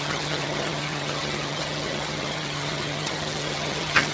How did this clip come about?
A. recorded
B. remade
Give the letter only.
B